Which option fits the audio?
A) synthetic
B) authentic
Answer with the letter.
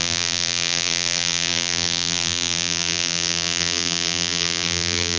A